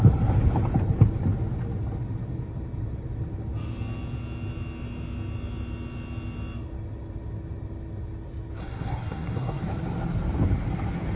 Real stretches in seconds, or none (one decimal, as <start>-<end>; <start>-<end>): 0.0-8.6; 9.6-11.2